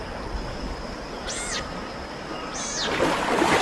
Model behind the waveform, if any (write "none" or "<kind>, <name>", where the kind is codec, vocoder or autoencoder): none